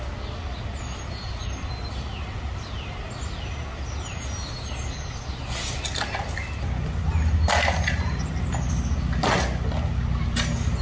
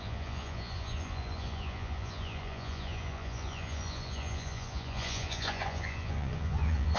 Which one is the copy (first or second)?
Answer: second